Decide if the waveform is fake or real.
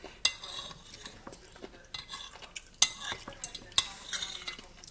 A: real